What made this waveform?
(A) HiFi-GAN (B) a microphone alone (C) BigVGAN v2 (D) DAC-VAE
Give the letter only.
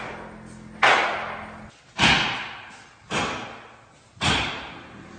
B